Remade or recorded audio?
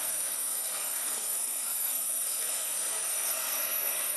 remade